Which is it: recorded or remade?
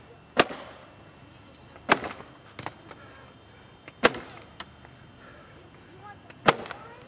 recorded